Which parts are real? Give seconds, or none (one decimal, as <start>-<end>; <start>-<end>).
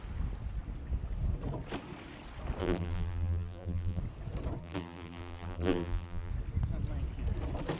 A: 0.0-2.6; 4.0-4.6; 6.3-7.8